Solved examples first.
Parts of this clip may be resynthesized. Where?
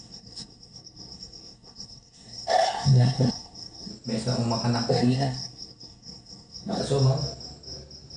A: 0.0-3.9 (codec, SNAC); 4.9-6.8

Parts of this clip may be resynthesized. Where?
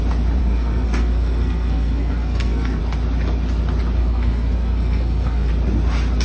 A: 0.4-2.8 (codec, SNAC); 4.0-5.5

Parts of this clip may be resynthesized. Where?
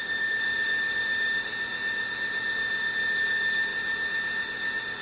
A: none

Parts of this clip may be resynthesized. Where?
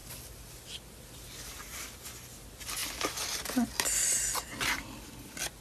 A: none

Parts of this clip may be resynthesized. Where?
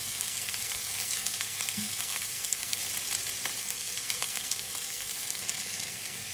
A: 0.0-2.8 (codec, SNAC); 3.6-6.3